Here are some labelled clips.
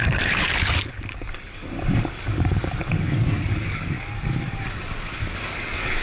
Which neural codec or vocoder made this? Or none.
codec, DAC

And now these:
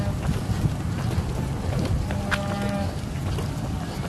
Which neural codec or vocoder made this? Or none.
none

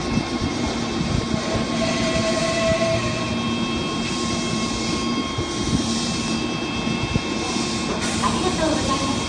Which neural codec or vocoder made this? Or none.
vocoder, BigVGAN v2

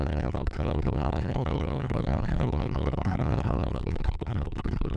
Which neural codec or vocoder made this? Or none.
codec, SNAC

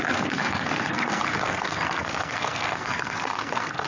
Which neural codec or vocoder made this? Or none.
codec, SNAC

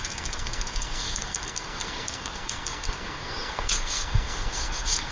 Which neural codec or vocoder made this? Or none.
codec, SNAC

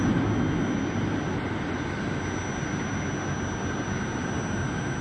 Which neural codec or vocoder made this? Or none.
none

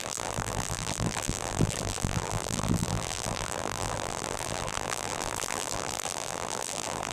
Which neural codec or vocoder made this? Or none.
vocoder, BigVGAN v2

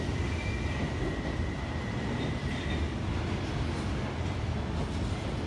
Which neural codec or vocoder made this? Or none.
none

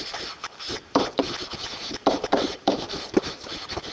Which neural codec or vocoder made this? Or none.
vocoder, BigVGAN v2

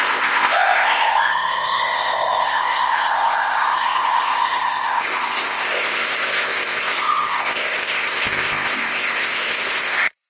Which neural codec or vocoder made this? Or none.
codec, ZipCodec